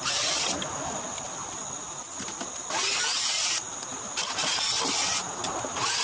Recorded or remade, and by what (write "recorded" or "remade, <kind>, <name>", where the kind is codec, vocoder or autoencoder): recorded